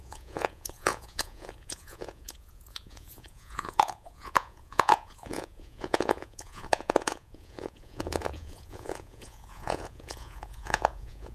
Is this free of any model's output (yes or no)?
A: no